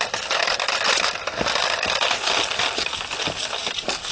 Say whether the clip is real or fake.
real